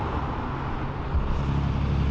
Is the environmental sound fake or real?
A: real